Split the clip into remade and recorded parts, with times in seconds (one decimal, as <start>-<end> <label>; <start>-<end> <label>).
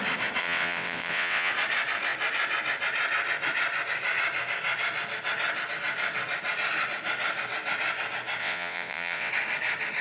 0.0-0.4 recorded; 0.4-1.5 remade; 1.5-8.4 recorded; 8.4-9.3 remade; 9.3-10.0 recorded